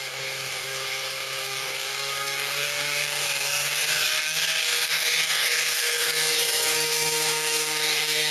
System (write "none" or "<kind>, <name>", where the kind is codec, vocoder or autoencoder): codec, DAC